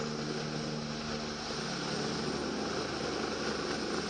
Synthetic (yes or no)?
no